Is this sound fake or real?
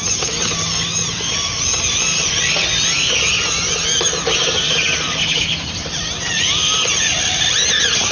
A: real